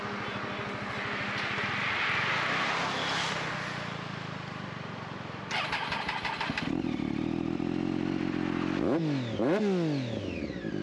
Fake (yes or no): no